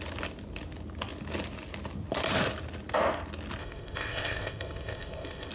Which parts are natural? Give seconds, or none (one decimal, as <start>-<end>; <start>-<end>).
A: 0.0-3.6